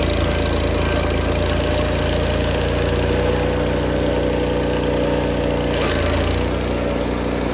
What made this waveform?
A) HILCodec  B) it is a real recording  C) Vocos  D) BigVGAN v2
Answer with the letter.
B